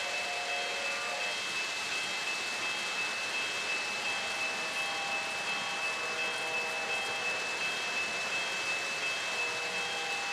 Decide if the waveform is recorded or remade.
recorded